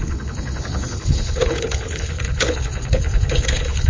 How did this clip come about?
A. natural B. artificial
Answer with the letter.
B